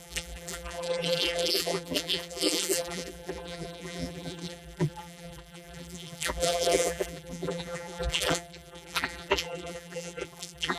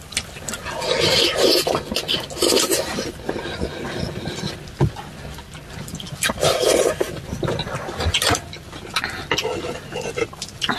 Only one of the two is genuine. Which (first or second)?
second